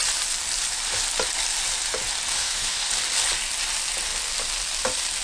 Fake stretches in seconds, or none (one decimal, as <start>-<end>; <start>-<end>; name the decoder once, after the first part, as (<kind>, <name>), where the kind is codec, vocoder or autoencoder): 2.3-2.9 (autoencoder, DAC-VAE)